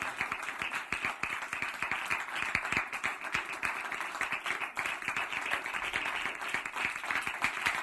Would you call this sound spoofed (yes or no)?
no